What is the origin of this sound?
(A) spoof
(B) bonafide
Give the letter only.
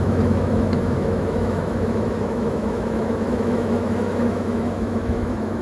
A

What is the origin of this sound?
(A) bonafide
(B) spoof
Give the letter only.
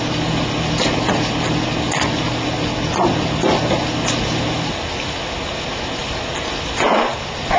A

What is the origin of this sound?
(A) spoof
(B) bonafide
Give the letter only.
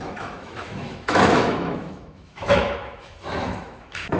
A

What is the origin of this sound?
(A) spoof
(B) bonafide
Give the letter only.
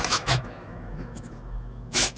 A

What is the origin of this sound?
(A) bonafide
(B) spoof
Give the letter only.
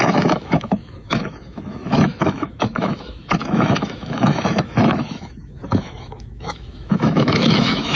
B